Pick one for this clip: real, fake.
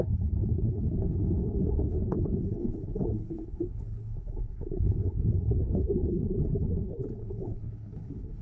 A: fake